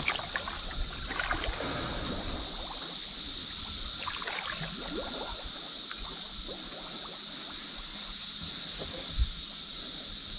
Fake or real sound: real